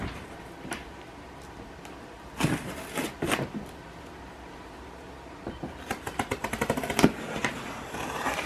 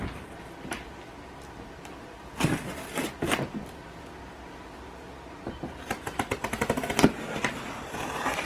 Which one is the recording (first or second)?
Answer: second